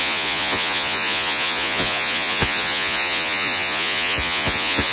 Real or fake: fake